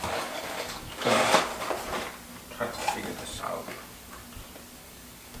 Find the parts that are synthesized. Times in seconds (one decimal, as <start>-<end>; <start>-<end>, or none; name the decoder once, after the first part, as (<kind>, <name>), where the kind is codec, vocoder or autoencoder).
0.0-1.5 (codec, DAC); 3.4-4.2; 4.7-5.4